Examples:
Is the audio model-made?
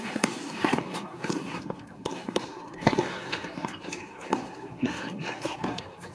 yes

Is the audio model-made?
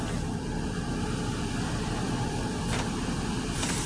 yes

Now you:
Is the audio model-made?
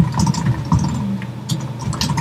no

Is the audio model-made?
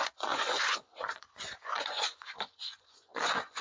yes